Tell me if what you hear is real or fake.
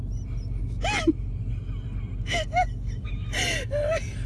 real